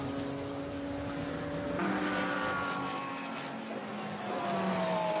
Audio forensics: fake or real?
real